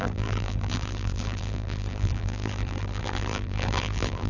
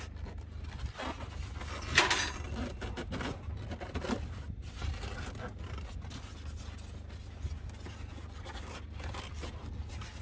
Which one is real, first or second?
second